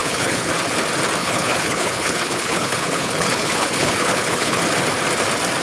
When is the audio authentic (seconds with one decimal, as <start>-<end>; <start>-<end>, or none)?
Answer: 0.5-1.2; 4.6-5.6